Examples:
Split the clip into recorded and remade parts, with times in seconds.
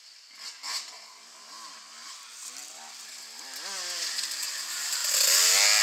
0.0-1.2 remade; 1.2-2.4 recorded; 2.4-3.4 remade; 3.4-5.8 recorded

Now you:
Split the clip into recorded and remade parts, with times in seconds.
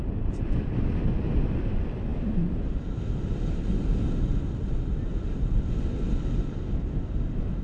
0.0-7.6 recorded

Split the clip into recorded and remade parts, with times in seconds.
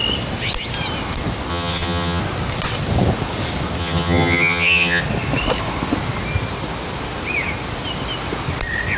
0.0-1.5 recorded; 1.5-2.2 remade; 2.2-3.8 recorded; 3.8-5.0 remade; 5.0-9.0 recorded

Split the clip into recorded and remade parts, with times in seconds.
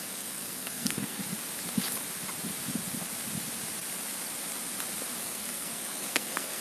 0.0-1.2 remade; 1.2-5.2 recorded; 5.2-6.6 remade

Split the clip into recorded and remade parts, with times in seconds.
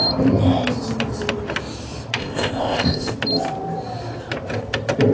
0.0-2.2 recorded; 2.2-3.1 remade; 3.1-5.1 recorded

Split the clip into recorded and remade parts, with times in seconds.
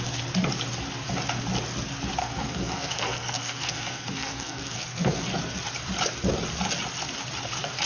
0.0-2.2 recorded; 2.2-5.2 remade; 5.2-7.9 recorded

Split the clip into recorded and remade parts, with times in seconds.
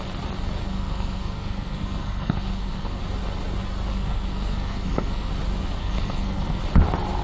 0.0-0.6 recorded; 0.6-3.0 remade; 3.0-3.9 recorded; 3.9-5.3 remade; 5.3-5.8 recorded; 5.8-6.6 remade; 6.6-7.2 recorded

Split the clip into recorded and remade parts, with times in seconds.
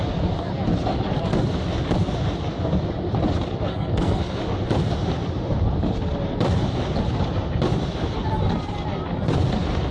0.0-3.7 recorded; 3.7-4.4 remade; 4.4-9.9 recorded